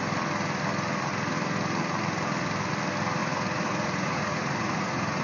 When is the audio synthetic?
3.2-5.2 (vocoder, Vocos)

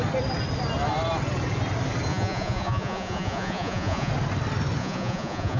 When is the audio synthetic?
2.1-4.1 (vocoder, Vocos); 4.8-5.6

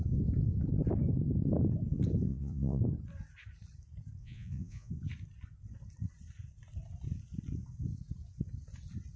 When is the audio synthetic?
2.3-2.8 (vocoder, Vocos); 4.2-4.9